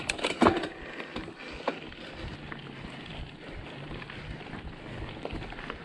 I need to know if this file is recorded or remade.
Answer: recorded